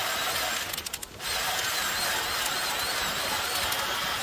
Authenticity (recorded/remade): recorded